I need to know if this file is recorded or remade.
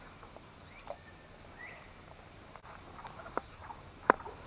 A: remade